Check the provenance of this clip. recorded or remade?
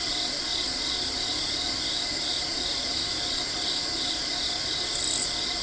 recorded